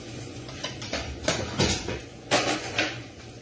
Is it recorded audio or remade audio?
remade